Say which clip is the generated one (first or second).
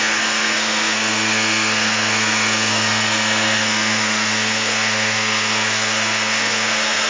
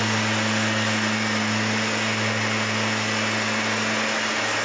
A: first